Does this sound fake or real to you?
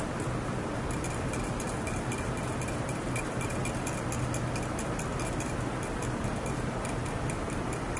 real